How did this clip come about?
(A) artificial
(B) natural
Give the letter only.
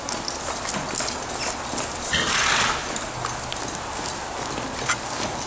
B